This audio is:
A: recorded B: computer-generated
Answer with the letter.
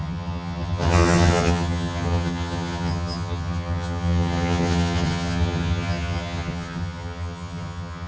B